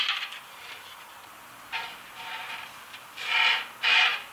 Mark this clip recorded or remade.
remade